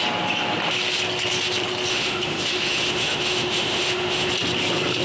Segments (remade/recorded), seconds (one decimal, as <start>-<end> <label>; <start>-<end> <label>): 0.0-1.9 recorded; 1.9-4.3 remade; 4.3-5.0 recorded